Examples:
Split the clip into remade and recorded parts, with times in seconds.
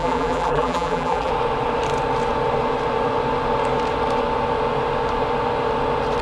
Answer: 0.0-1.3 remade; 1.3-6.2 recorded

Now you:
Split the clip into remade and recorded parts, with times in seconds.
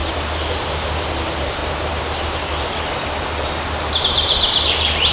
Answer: 0.0-1.6 remade; 1.6-4.0 recorded; 4.0-5.1 remade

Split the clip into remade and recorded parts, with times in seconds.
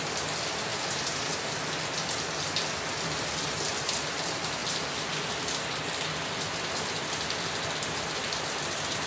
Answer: 0.0-9.1 recorded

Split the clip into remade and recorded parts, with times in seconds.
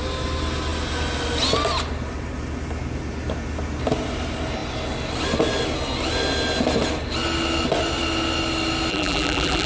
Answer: 0.0-8.9 recorded; 8.9-9.7 remade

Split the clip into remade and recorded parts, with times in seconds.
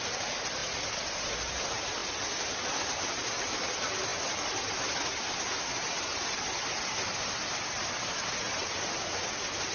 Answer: 0.0-0.6 recorded; 0.6-1.2 remade; 1.2-9.7 recorded